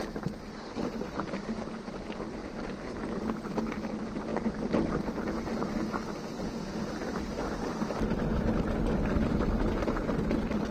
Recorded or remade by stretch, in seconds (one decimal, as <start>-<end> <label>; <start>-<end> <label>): 0.0-10.7 recorded